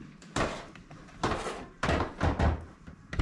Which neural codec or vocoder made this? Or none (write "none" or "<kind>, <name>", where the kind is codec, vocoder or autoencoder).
vocoder, BigVGAN v2